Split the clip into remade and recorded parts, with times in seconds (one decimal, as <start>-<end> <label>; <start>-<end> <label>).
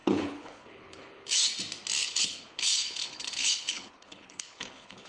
0.0-1.5 remade; 1.5-2.0 recorded; 2.0-5.1 remade